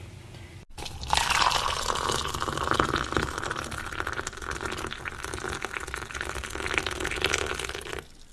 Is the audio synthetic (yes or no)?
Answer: no